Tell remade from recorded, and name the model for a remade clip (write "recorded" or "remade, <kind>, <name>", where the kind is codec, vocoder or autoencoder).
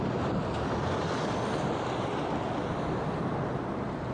recorded